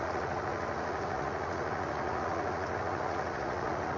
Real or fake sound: fake